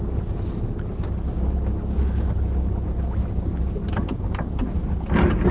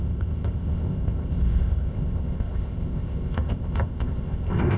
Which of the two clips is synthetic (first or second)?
second